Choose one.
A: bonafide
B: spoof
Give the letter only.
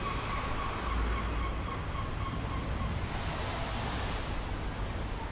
A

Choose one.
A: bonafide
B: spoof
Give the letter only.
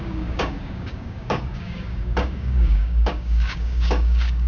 B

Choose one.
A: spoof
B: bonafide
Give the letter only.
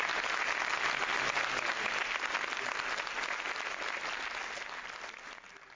B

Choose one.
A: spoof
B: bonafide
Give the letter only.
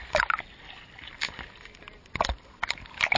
B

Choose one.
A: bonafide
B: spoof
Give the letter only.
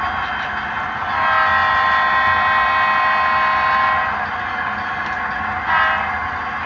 A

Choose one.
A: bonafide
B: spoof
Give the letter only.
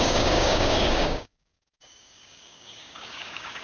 B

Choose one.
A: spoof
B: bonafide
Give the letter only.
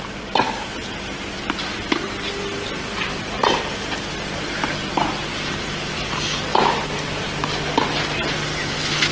B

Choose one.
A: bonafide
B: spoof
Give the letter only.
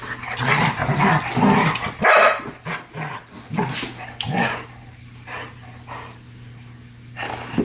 A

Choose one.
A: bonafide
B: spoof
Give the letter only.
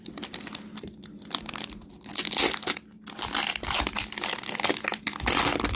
A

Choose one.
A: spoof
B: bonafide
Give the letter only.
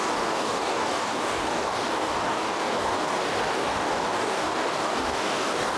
A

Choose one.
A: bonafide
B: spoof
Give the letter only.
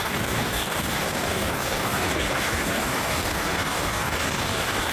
B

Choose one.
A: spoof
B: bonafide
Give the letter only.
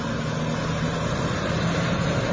B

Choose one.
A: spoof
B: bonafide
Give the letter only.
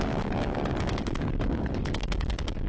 A